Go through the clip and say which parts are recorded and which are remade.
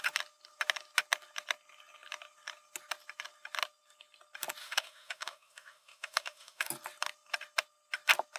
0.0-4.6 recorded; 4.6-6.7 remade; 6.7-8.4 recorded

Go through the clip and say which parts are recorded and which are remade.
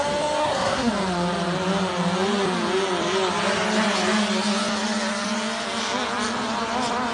0.0-0.4 recorded; 0.4-0.9 remade; 0.9-7.1 recorded